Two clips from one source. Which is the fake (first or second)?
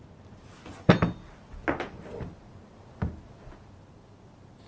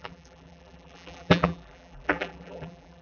second